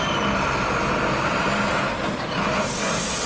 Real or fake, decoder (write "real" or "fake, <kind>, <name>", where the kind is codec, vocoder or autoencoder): real